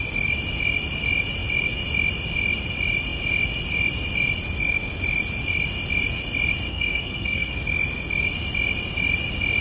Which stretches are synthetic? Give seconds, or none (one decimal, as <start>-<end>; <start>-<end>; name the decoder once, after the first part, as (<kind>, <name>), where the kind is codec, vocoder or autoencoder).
6.7-7.5 (codec, SNAC)